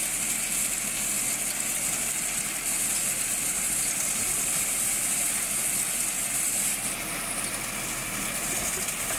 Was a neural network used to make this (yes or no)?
no